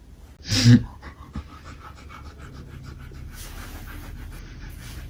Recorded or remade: recorded